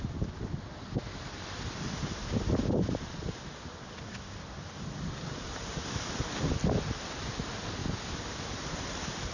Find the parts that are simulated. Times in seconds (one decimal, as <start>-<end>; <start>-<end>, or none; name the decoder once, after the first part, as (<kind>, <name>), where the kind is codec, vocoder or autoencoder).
none